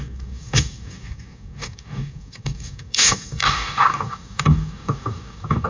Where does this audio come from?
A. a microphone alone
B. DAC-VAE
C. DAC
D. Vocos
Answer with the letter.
C